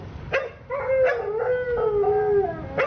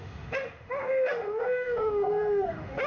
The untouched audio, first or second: first